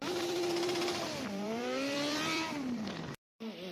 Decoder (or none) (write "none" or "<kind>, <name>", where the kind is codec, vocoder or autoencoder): vocoder, BigVGAN v2